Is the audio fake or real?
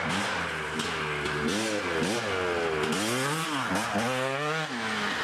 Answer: real